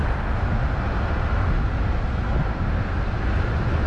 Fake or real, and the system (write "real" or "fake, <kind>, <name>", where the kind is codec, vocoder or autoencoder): real